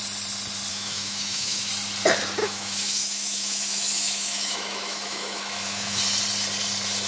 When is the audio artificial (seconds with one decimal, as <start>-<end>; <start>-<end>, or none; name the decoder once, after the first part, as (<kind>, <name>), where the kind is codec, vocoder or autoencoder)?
0.7-1.7 (autoencoder, DAC-VAE); 2.4-6.0